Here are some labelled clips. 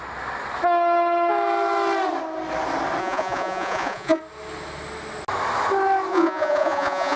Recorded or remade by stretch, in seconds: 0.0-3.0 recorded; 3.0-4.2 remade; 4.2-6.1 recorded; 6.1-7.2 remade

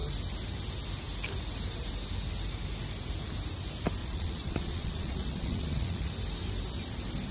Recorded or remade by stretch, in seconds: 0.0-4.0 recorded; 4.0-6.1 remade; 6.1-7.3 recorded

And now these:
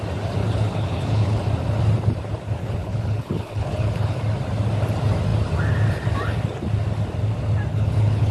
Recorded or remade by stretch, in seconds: 0.0-0.4 recorded; 0.4-1.4 remade; 1.4-2.6 recorded; 2.6-4.2 remade; 4.2-7.7 recorded; 7.7-8.3 remade